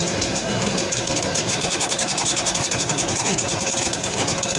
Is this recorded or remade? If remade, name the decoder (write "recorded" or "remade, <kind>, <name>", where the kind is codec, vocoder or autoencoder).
remade, codec, SNAC